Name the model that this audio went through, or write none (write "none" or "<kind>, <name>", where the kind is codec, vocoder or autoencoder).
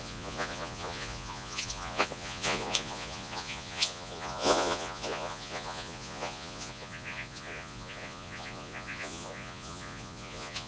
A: vocoder, Vocos